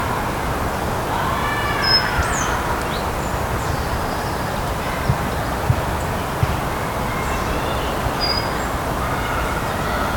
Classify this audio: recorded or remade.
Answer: recorded